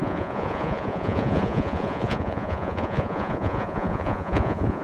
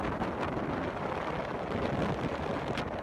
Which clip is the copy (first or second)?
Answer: first